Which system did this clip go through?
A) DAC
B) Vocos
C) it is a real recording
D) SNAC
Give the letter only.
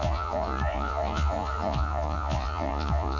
B